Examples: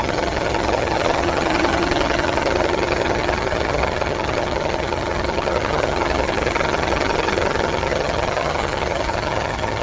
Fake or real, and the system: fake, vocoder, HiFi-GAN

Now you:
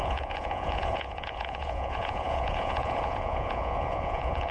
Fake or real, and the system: fake, vocoder, Vocos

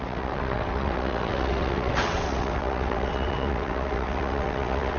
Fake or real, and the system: fake, vocoder, WaveNeXt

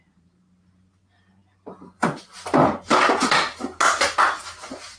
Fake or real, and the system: real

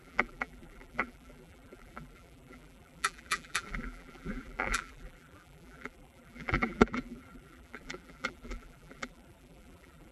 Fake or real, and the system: fake, vocoder, BigVGAN v2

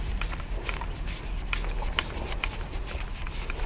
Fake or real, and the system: real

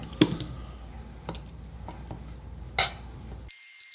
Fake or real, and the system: real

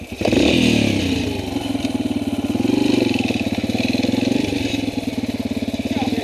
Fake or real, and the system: real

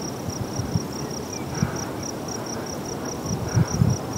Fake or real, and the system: real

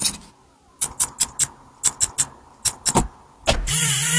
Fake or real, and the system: real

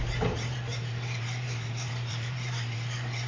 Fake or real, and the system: fake, vocoder, BigVGAN v2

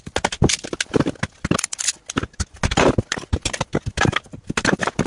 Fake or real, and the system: real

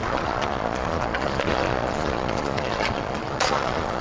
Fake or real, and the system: fake, vocoder, Vocos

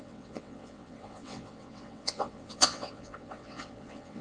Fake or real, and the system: fake, vocoder, WaveNeXt